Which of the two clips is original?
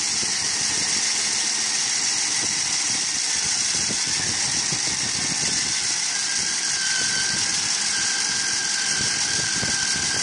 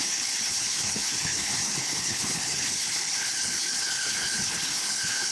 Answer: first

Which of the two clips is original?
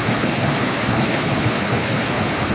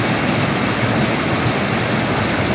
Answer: second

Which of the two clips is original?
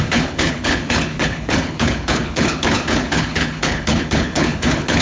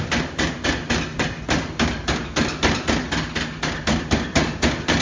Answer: second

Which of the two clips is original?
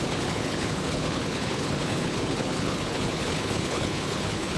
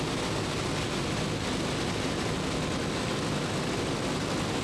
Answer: second